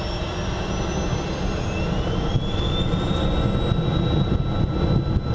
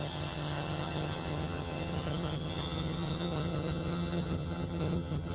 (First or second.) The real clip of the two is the first